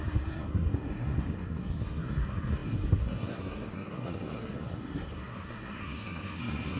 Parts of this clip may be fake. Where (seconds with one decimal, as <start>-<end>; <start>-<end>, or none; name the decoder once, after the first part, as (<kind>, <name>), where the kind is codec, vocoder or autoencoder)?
0.0-6.8 (codec, SNAC)